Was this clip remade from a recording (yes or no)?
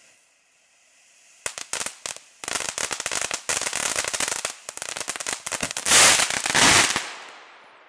no